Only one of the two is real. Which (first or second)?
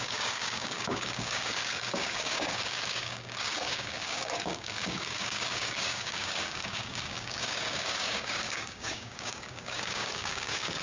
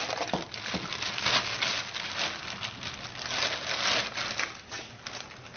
second